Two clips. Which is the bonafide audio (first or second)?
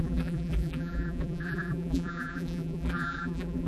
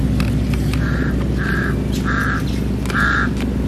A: second